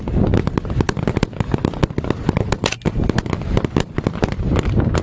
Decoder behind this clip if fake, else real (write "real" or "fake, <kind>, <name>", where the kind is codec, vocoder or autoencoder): real